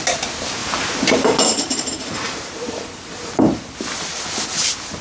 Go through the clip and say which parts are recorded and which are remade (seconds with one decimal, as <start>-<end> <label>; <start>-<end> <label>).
0.0-0.6 recorded; 0.6-3.6 remade; 3.6-5.0 recorded